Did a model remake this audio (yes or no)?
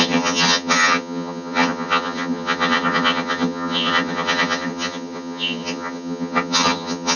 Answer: yes